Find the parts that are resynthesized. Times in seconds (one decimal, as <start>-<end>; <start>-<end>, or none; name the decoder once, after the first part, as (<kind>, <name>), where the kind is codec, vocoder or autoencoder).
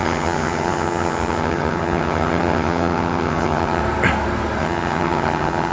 0.0-3.8 (vocoder, HiFi-GAN); 4.6-5.7